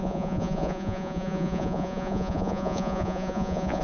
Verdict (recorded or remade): remade